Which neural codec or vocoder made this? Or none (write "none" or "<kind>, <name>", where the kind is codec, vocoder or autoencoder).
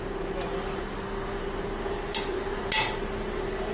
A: none